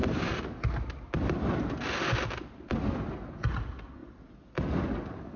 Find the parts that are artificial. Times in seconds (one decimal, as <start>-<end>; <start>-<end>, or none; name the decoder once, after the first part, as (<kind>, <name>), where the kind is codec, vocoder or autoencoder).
0.0-1.2 (vocoder, BigVGAN v2)